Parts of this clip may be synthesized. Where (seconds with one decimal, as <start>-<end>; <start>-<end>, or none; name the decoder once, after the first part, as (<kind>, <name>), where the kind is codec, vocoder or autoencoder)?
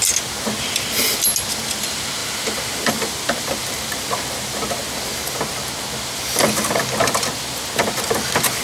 2.2-5.3 (vocoder, BigVGAN v2)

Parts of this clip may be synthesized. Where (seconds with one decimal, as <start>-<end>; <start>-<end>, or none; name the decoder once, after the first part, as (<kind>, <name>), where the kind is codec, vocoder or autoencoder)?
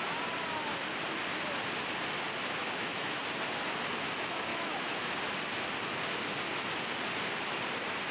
2.6-3.2 (autoencoder, DAC-VAE); 4.5-5.1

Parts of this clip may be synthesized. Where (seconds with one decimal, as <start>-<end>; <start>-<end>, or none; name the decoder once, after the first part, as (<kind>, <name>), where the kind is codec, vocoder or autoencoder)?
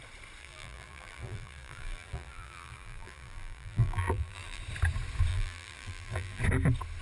0.4-4.6 (vocoder, BigVGAN v2); 5.3-6.4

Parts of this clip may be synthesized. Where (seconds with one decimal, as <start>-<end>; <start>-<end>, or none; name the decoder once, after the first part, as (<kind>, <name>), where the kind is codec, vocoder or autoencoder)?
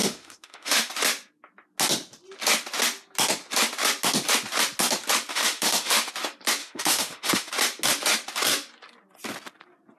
0.0-0.9 (autoencoder, DAC-VAE); 5.3-6.1; 6.6-7.5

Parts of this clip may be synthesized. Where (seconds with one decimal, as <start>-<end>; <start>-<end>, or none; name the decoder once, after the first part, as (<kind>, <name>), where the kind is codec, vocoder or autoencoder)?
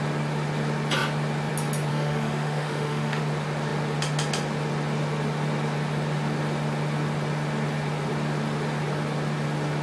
1.9-3.2 (autoencoder, DAC-VAE)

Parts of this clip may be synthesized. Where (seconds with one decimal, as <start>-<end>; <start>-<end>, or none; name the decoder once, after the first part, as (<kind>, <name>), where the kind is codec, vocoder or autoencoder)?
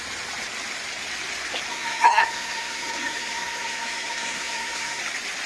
1.7-5.0 (codec, SNAC)